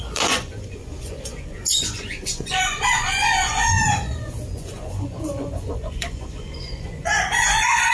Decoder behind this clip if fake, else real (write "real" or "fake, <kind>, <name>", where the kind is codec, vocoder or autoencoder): fake, vocoder, Vocos